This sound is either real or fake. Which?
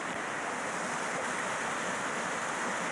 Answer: real